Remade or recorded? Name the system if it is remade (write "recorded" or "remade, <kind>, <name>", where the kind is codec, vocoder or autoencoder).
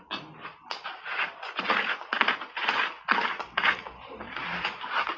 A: recorded